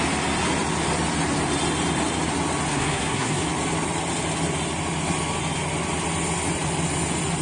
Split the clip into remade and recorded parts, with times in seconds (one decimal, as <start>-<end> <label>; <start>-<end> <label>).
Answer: 0.0-2.7 recorded; 2.7-3.5 remade; 3.5-7.4 recorded